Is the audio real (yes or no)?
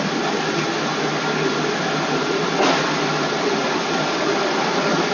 yes